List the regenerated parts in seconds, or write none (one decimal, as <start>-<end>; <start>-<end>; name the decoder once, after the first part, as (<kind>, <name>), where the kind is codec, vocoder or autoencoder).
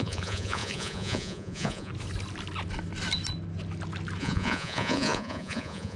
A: 0.0-1.9 (vocoder, Vocos); 4.2-6.0